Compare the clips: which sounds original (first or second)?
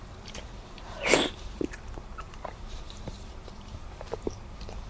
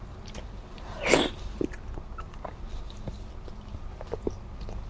second